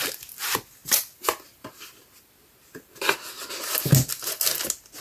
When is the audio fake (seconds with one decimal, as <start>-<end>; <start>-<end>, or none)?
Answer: none

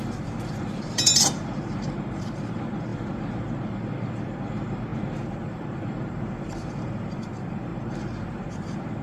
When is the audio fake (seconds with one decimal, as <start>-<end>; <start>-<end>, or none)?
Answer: 0.0-9.0

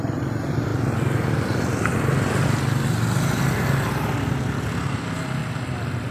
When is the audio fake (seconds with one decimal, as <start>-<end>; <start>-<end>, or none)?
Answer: none